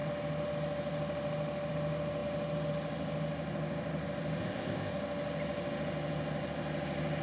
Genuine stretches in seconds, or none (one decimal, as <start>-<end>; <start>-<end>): 0.0-4.4; 4.9-7.2